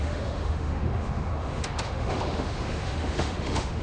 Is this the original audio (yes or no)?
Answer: no